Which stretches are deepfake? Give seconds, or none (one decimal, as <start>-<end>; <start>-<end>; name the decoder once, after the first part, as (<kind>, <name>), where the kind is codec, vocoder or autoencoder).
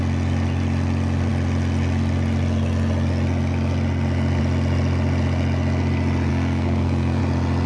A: 6.3-7.2 (codec, SNAC)